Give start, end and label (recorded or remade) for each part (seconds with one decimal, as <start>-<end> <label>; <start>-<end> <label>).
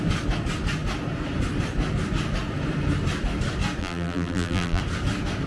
0.0-3.8 recorded; 3.8-4.8 remade; 4.8-5.5 recorded